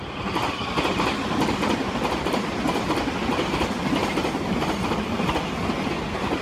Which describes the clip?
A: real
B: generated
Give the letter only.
A